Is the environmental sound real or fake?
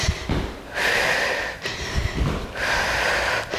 real